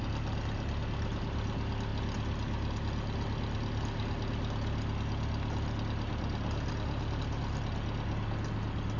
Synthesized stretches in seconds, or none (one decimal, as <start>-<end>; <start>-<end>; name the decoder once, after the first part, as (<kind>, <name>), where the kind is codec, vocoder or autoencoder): none